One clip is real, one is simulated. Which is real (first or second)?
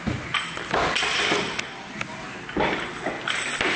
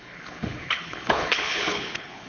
first